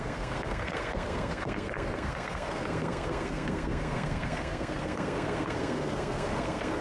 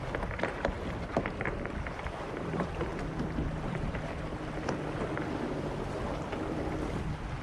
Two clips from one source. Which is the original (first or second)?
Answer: second